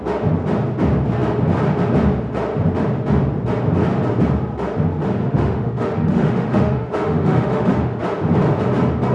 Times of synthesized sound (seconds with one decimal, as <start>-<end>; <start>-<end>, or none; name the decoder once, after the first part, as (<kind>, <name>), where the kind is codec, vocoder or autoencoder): 5.2-8.0 (autoencoder, DAC-VAE)

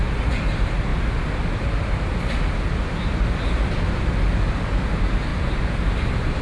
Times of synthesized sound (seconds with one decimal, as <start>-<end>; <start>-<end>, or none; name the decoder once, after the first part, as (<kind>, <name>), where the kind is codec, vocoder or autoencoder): none

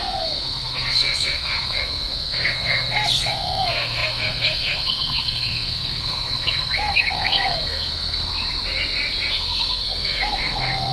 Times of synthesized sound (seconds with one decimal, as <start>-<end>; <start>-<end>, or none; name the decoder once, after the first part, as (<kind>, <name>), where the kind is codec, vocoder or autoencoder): 0.0-8.3 (codec, SNAC); 9.3-10.9